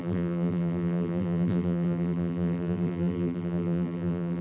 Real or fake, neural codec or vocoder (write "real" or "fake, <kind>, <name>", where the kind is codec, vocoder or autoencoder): fake, vocoder, BigVGAN v2